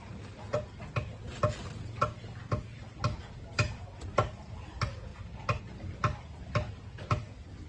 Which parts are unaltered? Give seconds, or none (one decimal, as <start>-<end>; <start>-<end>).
0.0-7.7